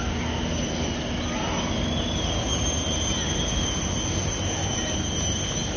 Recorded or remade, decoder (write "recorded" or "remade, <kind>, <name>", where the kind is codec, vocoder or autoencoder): recorded